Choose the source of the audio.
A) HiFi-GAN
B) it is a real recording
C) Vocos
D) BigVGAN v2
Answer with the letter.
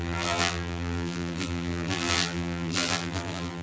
D